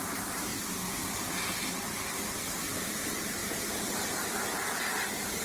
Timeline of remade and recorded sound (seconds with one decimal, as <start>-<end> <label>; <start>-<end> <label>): 0.0-5.4 recorded